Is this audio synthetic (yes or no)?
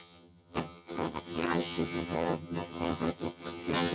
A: yes